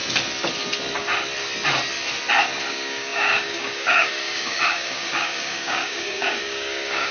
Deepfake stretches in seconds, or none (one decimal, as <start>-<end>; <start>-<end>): 2.7-7.1